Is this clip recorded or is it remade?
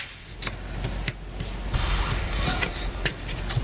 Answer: recorded